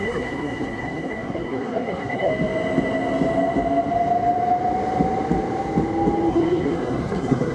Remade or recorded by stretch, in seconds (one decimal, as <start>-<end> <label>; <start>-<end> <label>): 0.0-2.3 remade; 2.3-6.3 recorded; 6.3-7.5 remade